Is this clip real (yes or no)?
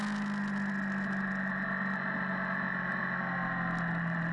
yes